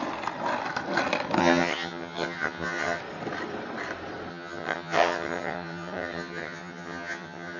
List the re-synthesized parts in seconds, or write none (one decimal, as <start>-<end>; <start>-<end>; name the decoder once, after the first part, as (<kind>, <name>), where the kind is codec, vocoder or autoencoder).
1.4-3.0 (vocoder, HiFi-GAN); 4.3-7.6